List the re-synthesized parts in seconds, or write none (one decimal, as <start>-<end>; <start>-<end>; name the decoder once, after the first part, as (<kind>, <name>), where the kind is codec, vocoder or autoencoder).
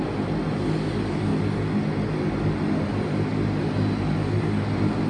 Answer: none